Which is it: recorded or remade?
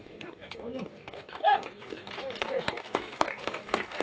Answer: remade